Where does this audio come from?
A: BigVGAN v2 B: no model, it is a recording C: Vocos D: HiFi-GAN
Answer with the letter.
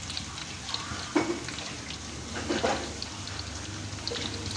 B